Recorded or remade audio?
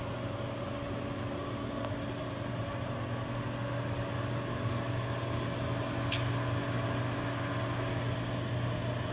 recorded